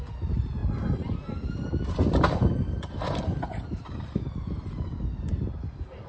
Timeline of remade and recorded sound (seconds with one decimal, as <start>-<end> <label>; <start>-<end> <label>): 0.0-6.1 recorded